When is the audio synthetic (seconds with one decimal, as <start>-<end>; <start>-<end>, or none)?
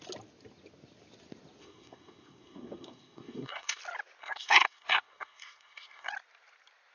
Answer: 1.6-3.8; 4.2-6.1